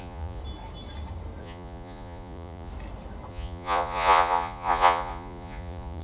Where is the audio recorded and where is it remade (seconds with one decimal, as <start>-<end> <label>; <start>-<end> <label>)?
0.0-0.4 remade; 0.4-1.4 recorded; 1.4-2.7 remade; 2.7-3.3 recorded; 3.3-6.0 remade